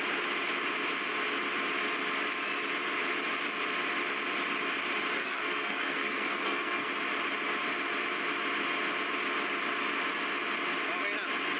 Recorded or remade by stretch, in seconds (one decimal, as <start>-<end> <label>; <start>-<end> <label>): 0.0-5.2 recorded; 5.2-6.9 remade; 6.9-11.6 recorded